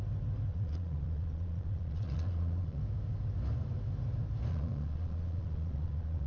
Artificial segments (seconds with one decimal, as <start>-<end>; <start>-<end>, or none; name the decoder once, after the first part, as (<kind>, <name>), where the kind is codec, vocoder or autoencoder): 0.5-2.8 (vocoder, Vocos); 4.5-6.3